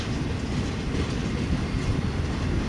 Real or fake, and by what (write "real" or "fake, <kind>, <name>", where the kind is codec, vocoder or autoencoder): real